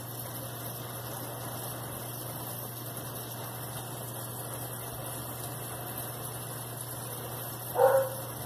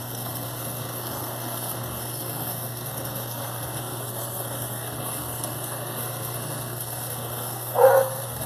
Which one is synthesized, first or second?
second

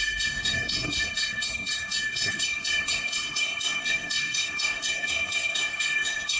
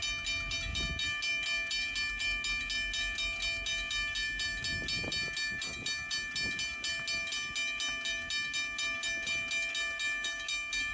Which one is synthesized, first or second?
first